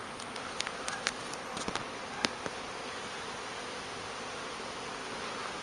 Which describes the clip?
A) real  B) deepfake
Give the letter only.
A